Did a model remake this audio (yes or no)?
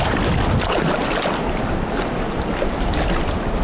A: no